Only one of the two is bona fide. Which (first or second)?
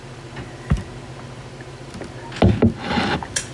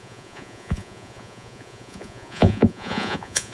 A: first